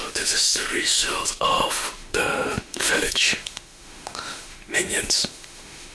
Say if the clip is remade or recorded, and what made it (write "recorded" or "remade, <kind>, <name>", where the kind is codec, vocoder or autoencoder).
remade, autoencoder, DAC-VAE